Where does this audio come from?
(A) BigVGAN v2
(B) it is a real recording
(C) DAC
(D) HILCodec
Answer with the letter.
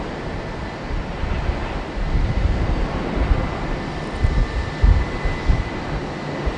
B